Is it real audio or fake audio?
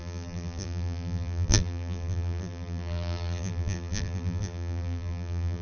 fake